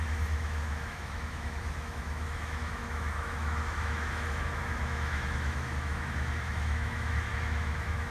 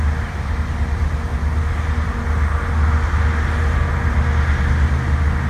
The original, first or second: second